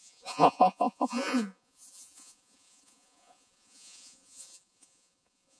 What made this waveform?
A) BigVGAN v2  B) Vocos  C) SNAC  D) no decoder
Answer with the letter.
B